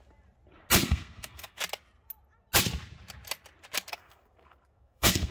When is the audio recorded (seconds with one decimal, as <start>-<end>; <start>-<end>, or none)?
0.0-0.8; 1.6-3.9